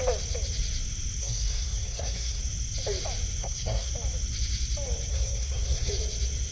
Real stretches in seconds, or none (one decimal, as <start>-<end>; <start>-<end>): 0.0-1.2; 2.4-3.4; 3.9-5.1; 5.9-6.5